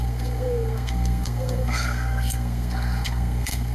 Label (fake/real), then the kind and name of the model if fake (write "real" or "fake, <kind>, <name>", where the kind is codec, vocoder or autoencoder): fake, codec, SNAC